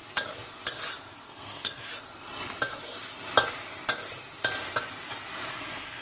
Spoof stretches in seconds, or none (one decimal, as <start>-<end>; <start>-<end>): 1.1-1.9; 5.5-6.0